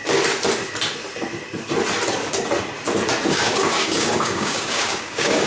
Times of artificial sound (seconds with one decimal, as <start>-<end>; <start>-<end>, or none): 3.3-5.5